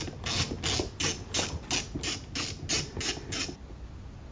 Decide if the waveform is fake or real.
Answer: real